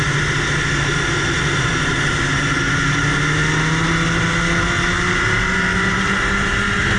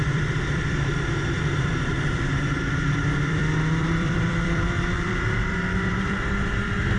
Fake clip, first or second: second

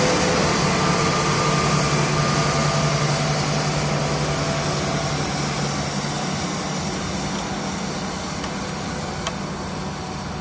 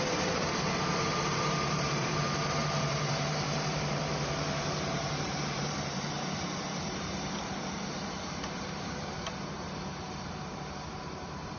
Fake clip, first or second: second